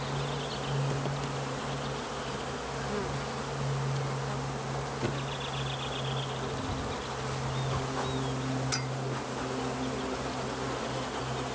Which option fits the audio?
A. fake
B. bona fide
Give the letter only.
B